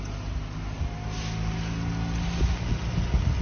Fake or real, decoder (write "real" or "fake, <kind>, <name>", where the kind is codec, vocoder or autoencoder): real